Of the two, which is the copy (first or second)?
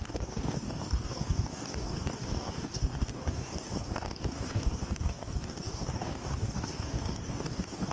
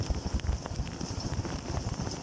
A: first